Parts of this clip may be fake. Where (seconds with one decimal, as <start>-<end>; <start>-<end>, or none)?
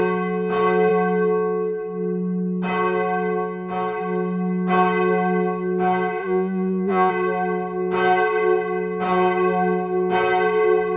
6.2-7.1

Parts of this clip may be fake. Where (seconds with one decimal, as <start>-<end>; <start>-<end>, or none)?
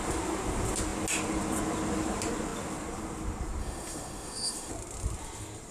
3.6-4.7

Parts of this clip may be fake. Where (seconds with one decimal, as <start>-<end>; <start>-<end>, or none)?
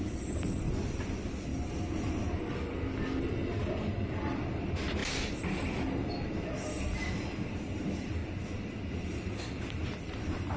0.0-1.5; 3.7-10.6